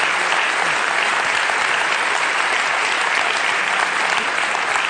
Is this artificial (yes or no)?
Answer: no